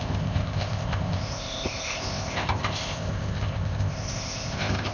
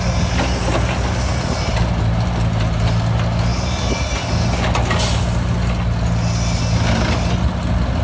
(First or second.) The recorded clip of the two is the second